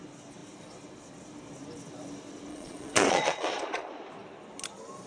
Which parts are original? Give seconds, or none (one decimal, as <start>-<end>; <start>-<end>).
0.0-2.5; 3.9-5.1